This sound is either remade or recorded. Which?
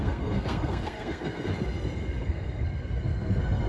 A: remade